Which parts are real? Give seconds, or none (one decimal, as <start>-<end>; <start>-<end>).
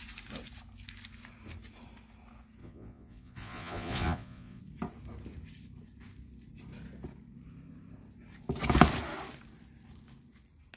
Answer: 0.0-2.6; 4.6-10.8